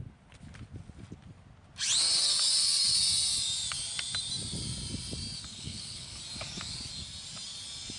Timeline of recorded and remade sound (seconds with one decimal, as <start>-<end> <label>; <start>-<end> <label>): 0.0-5.5 recorded; 5.5-6.2 remade; 6.2-8.0 recorded